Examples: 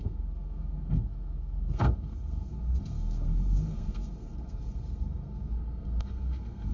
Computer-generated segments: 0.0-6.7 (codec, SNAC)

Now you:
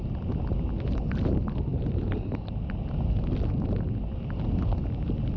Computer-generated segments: none

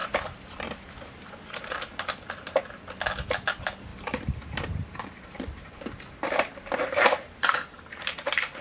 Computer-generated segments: 3.9-8.6 (vocoder, BigVGAN v2)